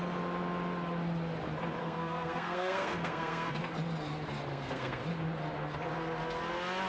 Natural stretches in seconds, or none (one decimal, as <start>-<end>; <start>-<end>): 0.0-1.8; 3.6-4.5; 5.0-6.9